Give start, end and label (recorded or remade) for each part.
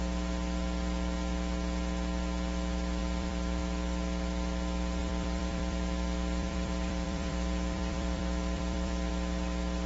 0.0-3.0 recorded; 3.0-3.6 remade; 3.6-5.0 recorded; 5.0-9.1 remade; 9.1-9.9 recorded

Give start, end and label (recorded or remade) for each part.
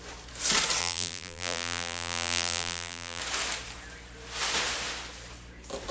0.0-0.8 recorded; 0.8-3.2 remade; 3.2-5.9 recorded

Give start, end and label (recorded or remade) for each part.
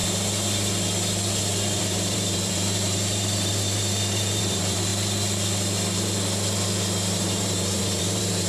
0.0-1.8 recorded; 1.8-4.9 remade; 4.9-7.2 recorded; 7.2-8.5 remade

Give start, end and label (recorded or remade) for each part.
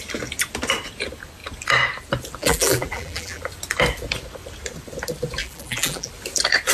0.0-2.4 recorded; 2.4-3.4 remade; 3.4-5.4 recorded; 5.4-6.1 remade; 6.1-6.7 recorded